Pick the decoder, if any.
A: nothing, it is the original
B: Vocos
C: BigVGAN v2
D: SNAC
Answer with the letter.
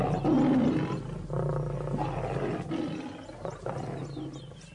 A